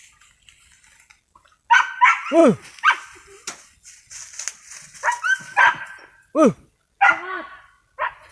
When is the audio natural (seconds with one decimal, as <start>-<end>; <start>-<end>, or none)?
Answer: 0.0-8.3